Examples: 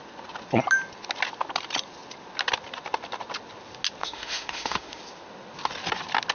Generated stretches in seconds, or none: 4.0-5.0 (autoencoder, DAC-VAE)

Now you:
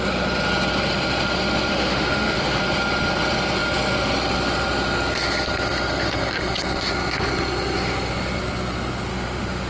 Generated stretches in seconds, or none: 1.7-2.6 (autoencoder, DAC-VAE); 9.1-9.7

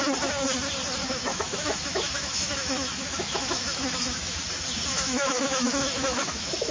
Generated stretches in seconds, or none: 1.0-4.4 (autoencoder, DAC-VAE); 4.9-6.7